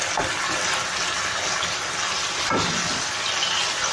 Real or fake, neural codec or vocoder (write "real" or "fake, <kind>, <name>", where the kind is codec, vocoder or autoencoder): real